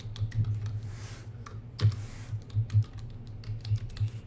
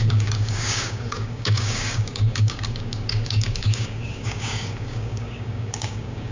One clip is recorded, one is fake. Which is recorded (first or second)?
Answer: first